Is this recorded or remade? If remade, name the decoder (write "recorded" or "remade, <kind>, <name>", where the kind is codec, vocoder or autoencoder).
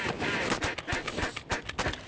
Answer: recorded